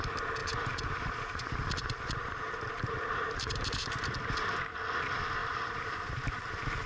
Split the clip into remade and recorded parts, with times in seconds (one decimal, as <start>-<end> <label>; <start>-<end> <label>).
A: 0.0-0.4 recorded; 0.4-3.9 remade; 3.9-5.4 recorded; 5.4-6.9 remade